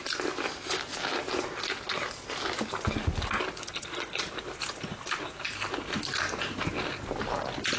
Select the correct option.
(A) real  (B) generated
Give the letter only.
A